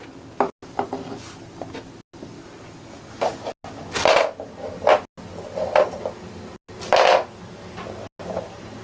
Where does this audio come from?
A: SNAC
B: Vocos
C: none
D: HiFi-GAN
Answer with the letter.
C